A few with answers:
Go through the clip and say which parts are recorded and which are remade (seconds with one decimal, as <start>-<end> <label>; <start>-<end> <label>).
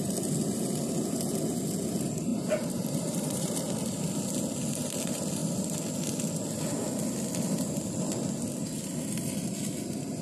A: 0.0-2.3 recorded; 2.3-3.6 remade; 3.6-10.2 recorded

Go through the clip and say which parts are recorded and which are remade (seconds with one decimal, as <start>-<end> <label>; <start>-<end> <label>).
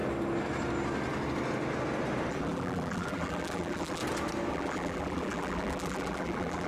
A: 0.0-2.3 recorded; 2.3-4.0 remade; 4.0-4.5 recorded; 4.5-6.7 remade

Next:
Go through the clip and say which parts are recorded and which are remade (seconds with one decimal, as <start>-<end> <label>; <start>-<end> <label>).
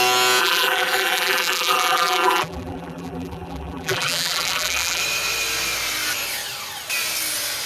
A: 0.0-0.4 recorded; 0.4-5.0 remade; 5.0-7.7 recorded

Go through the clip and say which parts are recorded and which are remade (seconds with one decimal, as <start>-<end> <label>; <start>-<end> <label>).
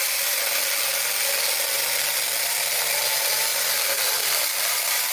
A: 0.0-3.5 recorded; 3.5-5.1 remade